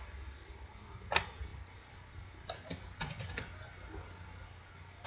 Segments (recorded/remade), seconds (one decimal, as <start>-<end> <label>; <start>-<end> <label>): 0.0-5.1 recorded